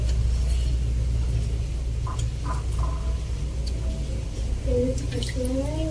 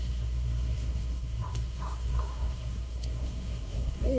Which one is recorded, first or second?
first